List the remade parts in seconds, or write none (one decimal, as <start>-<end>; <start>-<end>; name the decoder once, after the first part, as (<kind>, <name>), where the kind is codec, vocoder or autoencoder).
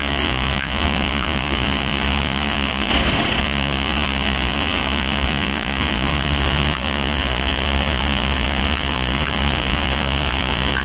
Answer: 0.0-2.9 (vocoder, Vocos); 3.4-10.8